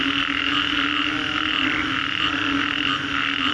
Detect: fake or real real